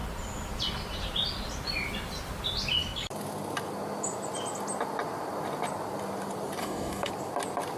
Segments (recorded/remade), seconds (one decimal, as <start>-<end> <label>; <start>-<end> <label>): 0.0-6.6 recorded; 6.6-7.1 remade; 7.1-7.8 recorded